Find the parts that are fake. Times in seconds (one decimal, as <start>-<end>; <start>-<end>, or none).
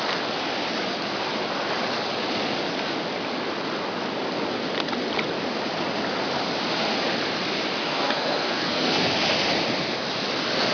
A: 7.8-9.1